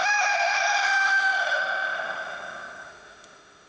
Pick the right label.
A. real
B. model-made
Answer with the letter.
B